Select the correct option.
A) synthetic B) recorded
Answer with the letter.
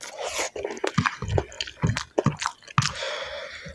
B